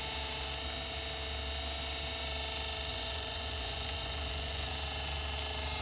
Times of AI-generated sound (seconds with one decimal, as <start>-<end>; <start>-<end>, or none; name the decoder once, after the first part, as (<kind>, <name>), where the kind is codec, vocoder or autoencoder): 2.9-4.7 (vocoder, Vocos)